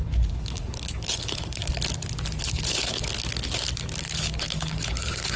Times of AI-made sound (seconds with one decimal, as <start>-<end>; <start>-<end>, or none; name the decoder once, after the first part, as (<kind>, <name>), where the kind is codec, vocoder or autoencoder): 0.0-1.6 (codec, HILCodec); 2.4-3.1; 4.0-5.4